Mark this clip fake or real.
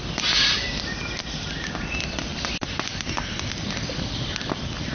fake